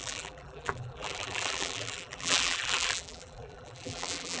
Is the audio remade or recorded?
remade